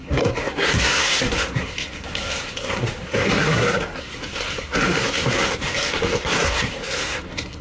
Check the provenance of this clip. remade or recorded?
remade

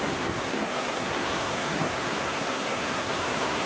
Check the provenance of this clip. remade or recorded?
remade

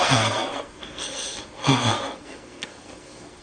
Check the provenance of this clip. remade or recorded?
remade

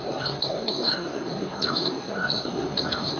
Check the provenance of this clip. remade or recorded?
remade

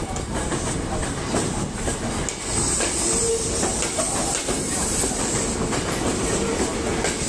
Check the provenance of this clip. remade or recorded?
recorded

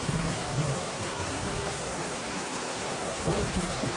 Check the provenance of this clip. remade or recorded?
remade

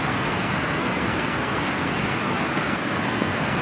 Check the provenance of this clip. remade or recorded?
remade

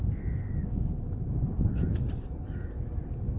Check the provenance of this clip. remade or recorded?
recorded